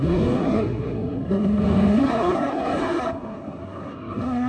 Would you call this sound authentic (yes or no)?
no